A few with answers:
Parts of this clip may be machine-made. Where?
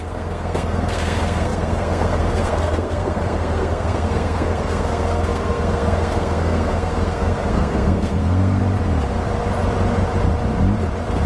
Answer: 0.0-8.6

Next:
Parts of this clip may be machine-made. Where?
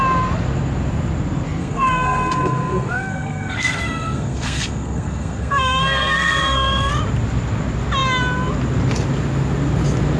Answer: 1.6-6.9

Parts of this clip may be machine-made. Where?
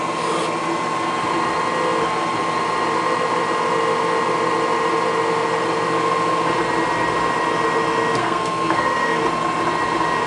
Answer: 8.2-9.2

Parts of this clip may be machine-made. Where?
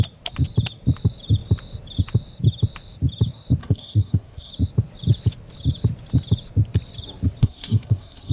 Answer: 3.6-4.5; 7.4-8.3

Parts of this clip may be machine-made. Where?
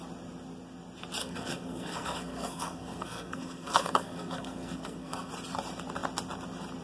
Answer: 1.2-5.3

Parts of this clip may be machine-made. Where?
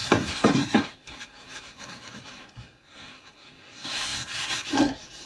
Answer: 0.0-5.3